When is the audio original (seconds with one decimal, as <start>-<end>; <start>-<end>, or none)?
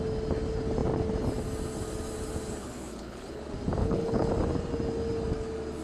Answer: 0.0-2.6; 3.4-3.8; 4.3-5.8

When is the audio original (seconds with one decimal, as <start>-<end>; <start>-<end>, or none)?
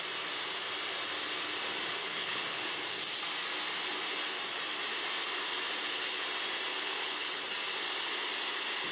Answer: 0.0-2.0; 2.6-6.7; 7.4-8.9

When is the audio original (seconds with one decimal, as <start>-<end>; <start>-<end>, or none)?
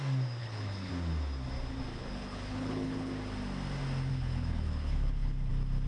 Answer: 0.0-0.4; 0.9-1.9; 3.1-4.1; 5.5-5.9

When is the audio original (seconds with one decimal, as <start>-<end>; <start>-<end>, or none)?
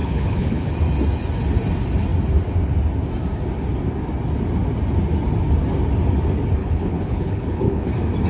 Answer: 0.7-6.6; 7.9-8.3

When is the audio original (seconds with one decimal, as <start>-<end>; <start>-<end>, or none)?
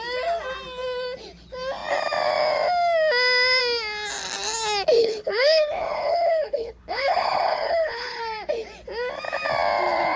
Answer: 0.0-5.0; 8.2-10.2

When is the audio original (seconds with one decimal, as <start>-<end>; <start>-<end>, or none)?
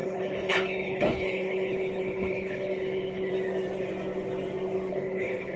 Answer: 3.3-4.9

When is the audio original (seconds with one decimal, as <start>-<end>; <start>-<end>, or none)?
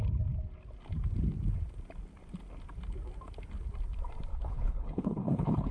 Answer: 0.0-4.3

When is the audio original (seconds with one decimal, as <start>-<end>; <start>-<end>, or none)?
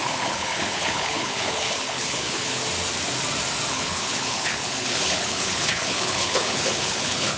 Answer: 2.6-3.7